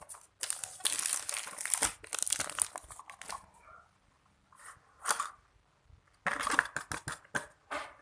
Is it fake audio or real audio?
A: real